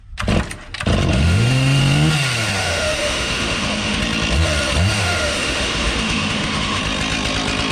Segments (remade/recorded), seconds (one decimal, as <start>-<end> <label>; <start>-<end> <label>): 0.0-1.1 recorded; 1.1-1.8 remade; 1.8-2.6 recorded; 2.6-4.0 remade; 4.0-5.0 recorded; 5.0-6.8 remade; 6.8-7.7 recorded